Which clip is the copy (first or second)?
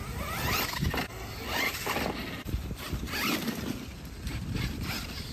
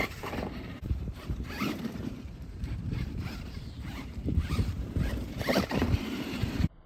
second